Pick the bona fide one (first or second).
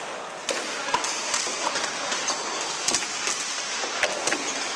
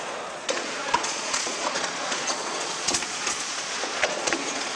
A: first